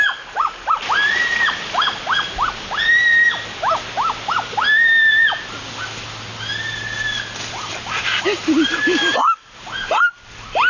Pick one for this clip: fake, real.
real